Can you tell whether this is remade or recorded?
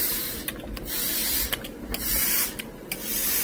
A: remade